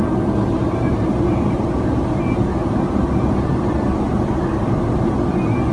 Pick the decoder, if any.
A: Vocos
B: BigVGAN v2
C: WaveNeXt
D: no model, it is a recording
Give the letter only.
D